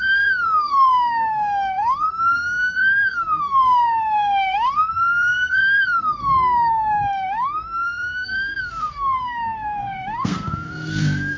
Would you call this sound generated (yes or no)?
yes